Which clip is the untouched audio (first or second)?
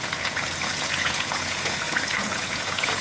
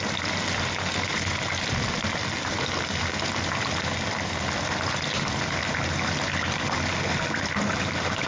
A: second